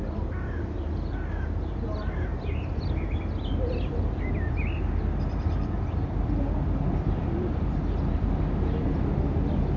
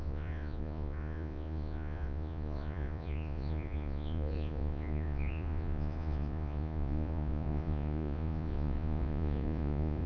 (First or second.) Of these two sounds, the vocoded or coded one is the second